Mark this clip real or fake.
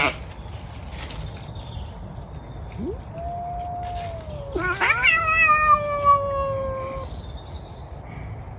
real